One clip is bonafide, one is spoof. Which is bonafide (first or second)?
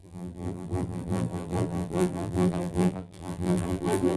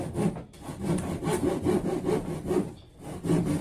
second